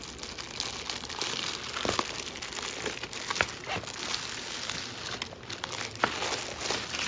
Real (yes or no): yes